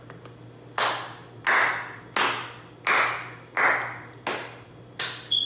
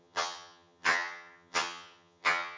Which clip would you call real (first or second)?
first